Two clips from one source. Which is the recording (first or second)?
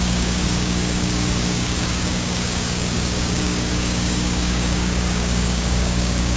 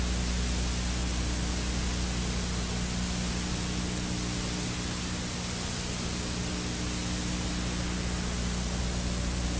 second